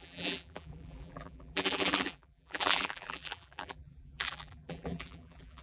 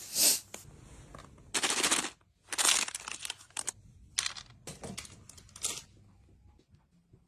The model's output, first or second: first